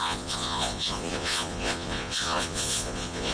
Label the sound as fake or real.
fake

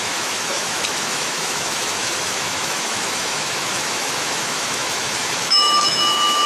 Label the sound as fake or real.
fake